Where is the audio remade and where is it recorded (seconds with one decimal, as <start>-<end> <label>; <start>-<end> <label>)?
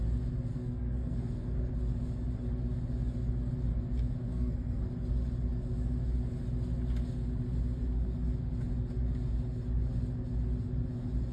0.0-0.5 recorded; 0.5-1.7 remade; 1.7-4.3 recorded; 4.3-4.9 remade; 4.9-11.3 recorded